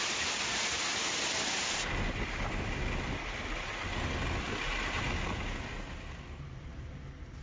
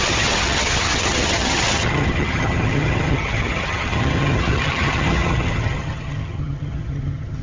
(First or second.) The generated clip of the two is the second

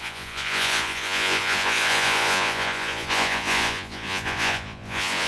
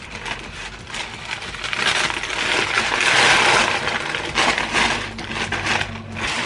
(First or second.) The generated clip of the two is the first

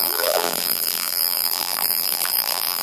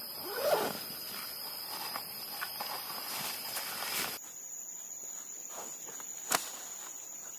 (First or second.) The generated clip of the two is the first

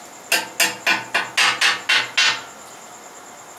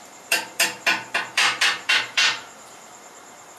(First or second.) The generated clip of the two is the second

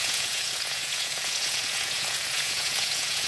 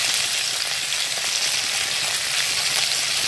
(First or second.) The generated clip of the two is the first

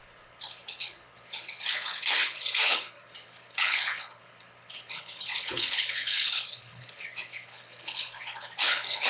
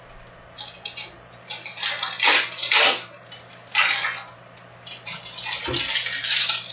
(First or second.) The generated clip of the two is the first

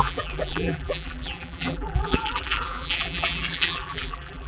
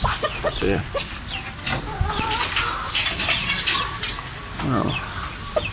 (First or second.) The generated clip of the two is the first